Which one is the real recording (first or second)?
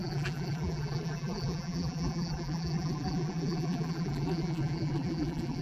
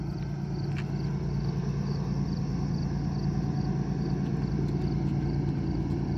second